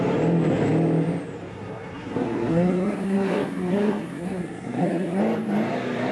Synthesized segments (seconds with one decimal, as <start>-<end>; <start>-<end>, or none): 1.5-5.2